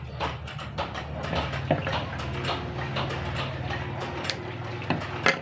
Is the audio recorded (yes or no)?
yes